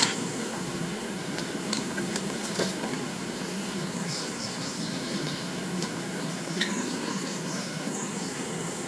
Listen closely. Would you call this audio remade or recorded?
remade